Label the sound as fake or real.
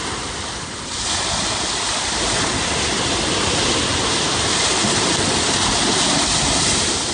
real